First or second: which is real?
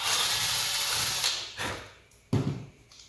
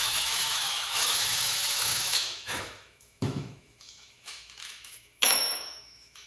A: first